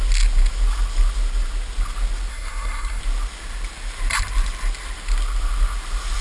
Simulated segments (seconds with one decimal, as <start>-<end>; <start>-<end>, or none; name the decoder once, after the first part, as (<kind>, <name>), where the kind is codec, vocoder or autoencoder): 2.3-3.0 (codec, SNAC)

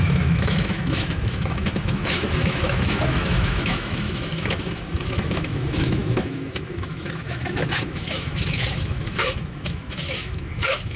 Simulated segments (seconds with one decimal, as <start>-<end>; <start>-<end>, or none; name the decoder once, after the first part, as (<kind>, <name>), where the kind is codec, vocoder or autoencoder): 0.0-11.0 (autoencoder, DAC-VAE)

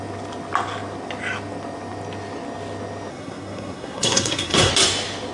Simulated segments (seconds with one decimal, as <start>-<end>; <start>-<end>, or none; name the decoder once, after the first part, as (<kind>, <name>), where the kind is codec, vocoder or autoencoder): 3.1-4.7 (codec, SNAC)